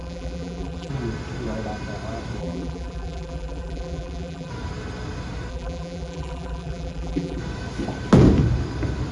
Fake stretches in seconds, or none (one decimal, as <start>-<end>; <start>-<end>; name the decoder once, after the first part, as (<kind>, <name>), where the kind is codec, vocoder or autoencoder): 0.0-0.9 (vocoder, BigVGAN v2); 2.4-4.5; 5.5-7.4